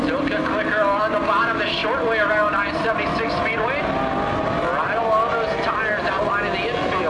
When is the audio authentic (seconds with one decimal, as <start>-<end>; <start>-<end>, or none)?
0.0-7.1